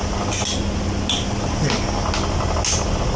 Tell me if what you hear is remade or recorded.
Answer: recorded